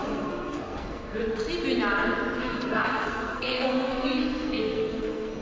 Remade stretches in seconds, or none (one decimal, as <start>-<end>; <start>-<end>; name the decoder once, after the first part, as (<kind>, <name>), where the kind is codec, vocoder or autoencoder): 0.0-1.2 (codec, SNAC); 2.4-5.4